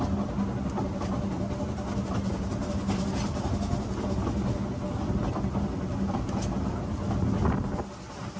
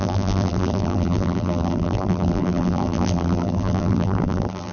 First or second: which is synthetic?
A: second